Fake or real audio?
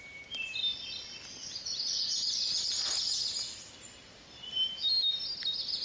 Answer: real